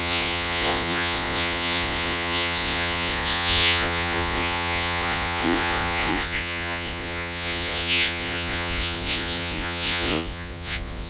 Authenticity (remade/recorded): remade